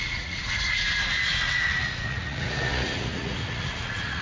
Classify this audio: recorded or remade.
remade